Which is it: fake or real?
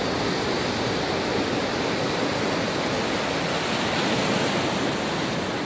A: real